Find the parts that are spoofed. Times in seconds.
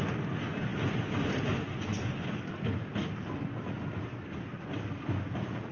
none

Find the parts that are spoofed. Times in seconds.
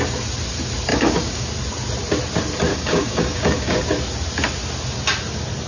0.9-1.4 (codec, DAC); 2.7-3.8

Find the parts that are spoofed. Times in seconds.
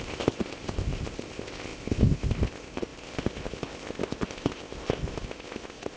0.0-6.0 (codec, ZipCodec)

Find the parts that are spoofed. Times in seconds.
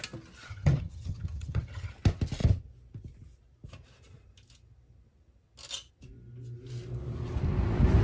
0.5-1.9 (vocoder, HiFi-GAN)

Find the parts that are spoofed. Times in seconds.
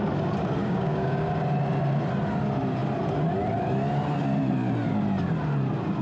0.6-1.3 (codec, DAC)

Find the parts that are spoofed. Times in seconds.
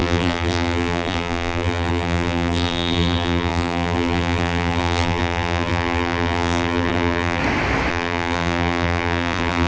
0.0-7.4 (vocoder, BigVGAN v2); 7.9-9.7